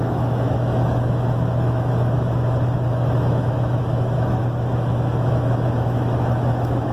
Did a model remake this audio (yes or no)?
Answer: yes